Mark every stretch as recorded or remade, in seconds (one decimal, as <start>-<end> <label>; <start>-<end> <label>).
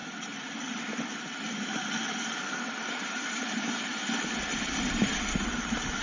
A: 0.0-2.9 recorded; 2.9-3.9 remade; 3.9-4.6 recorded; 4.6-6.0 remade